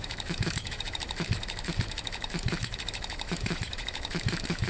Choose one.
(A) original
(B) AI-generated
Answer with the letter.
B